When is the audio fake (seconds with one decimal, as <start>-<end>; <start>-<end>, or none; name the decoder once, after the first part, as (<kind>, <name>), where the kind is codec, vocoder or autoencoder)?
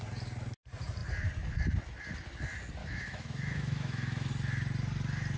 2.8-4.3 (autoencoder, DAC-VAE)